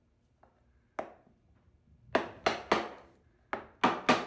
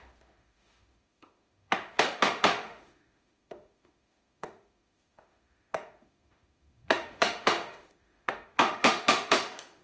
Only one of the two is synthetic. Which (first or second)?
second